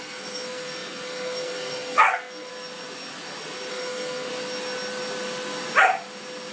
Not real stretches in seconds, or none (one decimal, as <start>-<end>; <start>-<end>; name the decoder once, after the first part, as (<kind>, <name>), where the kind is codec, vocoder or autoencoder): 0.0-2.5 (codec, SNAC); 3.7-4.3